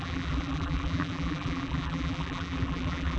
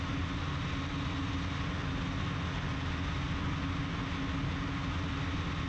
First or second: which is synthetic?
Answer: first